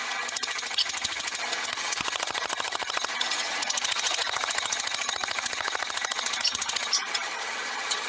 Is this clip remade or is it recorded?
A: remade